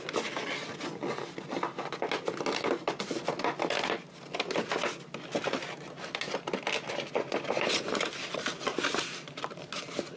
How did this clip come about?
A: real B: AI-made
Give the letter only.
A